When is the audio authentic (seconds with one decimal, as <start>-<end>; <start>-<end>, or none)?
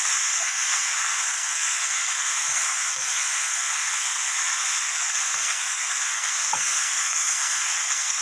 none